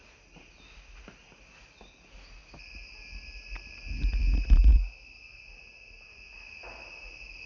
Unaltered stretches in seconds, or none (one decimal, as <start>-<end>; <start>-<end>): 0.0-7.5